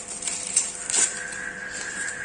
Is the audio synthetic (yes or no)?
no